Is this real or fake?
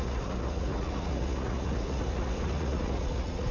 fake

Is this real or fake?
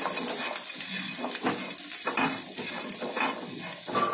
real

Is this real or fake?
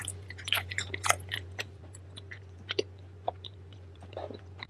fake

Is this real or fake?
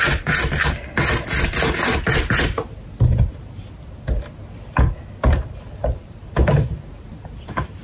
real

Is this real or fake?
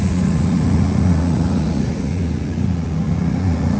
fake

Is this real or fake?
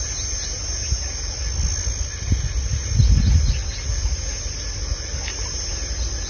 real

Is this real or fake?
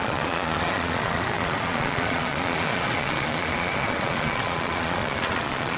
fake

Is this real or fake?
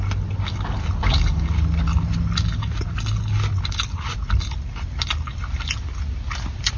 real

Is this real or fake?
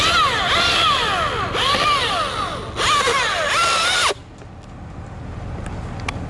real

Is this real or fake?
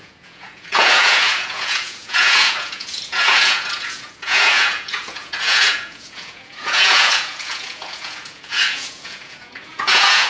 fake